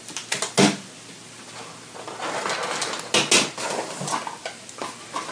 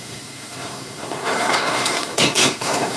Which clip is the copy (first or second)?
second